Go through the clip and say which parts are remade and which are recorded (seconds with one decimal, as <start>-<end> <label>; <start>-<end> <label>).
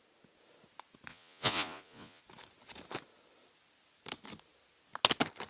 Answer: 0.0-1.1 recorded; 1.1-2.2 remade; 2.2-5.5 recorded